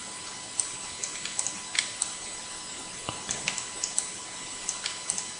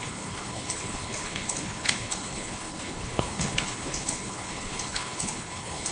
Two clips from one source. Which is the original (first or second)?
first